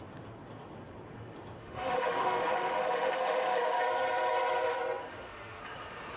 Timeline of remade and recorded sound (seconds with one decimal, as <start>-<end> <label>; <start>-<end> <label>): 0.0-1.6 recorded; 1.6-3.8 remade; 3.8-5.1 recorded; 5.1-5.6 remade; 5.6-6.2 recorded